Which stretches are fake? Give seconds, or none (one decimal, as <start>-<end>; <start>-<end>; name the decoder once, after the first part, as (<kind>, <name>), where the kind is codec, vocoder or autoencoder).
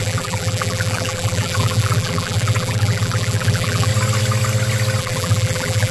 0.0-3.9 (vocoder, BigVGAN v2); 5.0-5.9